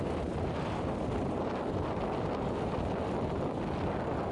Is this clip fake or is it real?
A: real